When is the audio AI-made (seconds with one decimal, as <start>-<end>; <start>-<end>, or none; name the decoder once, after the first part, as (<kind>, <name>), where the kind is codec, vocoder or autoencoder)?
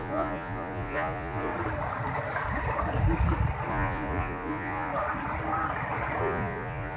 0.0-1.5 (vocoder, Vocos); 3.7-4.9; 6.2-7.0